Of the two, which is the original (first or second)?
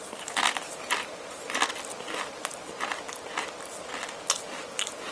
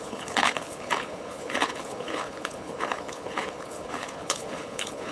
first